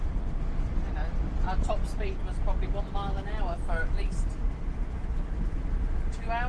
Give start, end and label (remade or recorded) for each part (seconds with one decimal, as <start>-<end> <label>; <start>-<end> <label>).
0.0-6.5 recorded